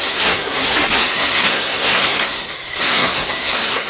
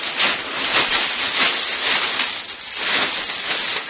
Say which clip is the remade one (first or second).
first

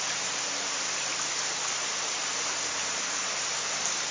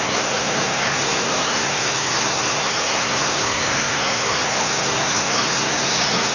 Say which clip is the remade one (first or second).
second